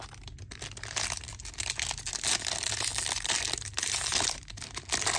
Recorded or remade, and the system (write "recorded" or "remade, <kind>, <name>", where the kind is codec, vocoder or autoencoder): recorded